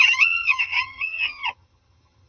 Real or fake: fake